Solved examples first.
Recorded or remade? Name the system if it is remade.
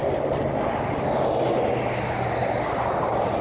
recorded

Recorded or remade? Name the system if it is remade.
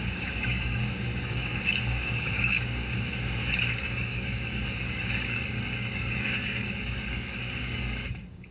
remade, codec, DAC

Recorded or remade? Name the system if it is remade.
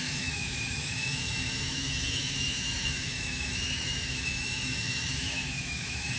remade, autoencoder, DAC-VAE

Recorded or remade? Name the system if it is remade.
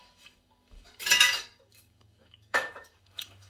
remade, codec, DAC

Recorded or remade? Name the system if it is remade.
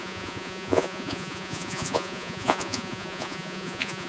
remade, vocoder, Vocos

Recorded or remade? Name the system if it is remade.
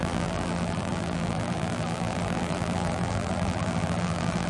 remade, vocoder, BigVGAN v2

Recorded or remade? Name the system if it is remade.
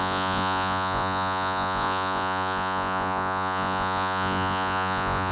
remade, vocoder, Vocos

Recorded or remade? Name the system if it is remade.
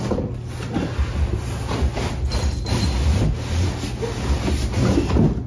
recorded